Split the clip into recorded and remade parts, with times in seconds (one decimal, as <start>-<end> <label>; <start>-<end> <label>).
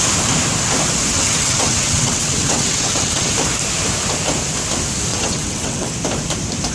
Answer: 0.0-1.1 recorded; 1.1-3.3 remade; 3.3-5.1 recorded; 5.1-5.9 remade; 5.9-6.7 recorded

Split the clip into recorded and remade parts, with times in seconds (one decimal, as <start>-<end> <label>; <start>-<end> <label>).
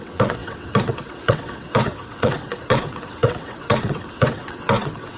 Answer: 0.0-5.2 remade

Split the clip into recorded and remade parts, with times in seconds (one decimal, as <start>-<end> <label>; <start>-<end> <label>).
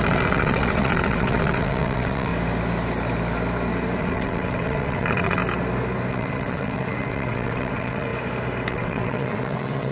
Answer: 0.0-2.3 remade; 2.3-4.0 recorded; 4.0-5.4 remade; 5.4-6.1 recorded; 6.1-8.1 remade; 8.1-8.7 recorded; 8.7-9.9 remade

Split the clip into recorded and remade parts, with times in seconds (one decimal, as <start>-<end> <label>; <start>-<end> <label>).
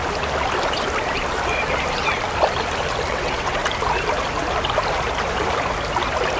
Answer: 0.0-3.1 recorded; 3.1-3.6 remade; 3.6-6.4 recorded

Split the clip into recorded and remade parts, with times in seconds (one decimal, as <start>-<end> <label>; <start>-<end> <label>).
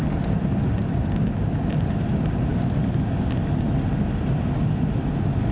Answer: 0.0-5.5 recorded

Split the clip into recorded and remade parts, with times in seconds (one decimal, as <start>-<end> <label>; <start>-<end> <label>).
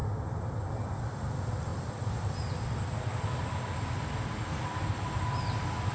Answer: 0.0-5.9 recorded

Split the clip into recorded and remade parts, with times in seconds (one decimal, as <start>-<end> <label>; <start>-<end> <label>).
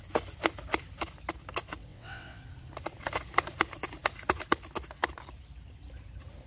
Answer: 0.0-1.9 recorded; 1.9-2.4 remade; 2.4-6.5 recorded